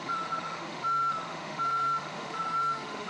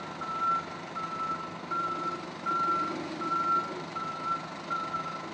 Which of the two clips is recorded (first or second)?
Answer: second